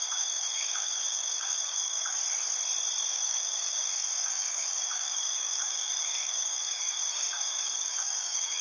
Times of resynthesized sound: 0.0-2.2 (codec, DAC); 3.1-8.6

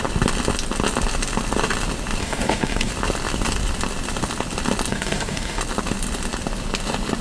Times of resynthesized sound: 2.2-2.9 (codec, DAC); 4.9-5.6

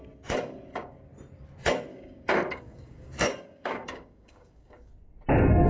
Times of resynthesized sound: 1.9-4.9 (codec, DAC)

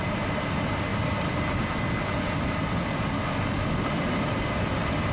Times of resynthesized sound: none